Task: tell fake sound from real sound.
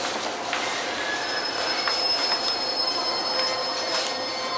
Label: real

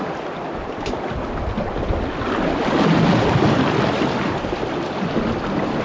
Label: real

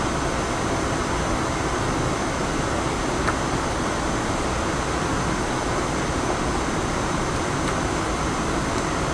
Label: real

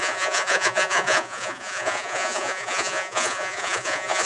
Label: fake